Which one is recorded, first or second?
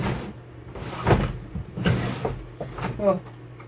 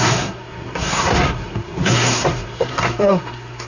first